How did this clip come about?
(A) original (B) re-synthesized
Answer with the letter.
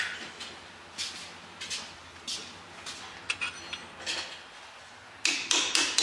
A